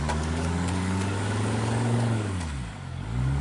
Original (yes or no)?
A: no